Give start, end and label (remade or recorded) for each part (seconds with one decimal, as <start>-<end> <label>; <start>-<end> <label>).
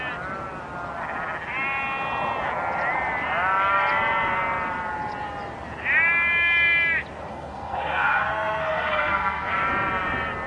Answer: 0.0-7.3 recorded; 7.3-9.5 remade; 9.5-10.5 recorded